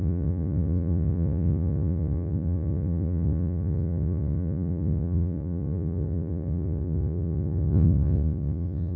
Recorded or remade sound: remade